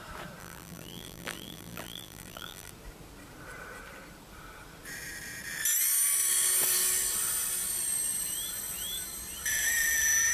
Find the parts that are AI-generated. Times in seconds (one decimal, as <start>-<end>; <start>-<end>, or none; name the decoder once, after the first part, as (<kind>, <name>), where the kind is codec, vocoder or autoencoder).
0.4-2.7 (vocoder, BigVGAN v2)